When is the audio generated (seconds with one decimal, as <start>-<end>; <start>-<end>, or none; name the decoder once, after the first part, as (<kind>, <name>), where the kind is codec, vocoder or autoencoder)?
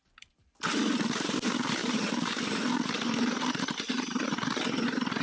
1.8-4.6 (vocoder, BigVGAN v2)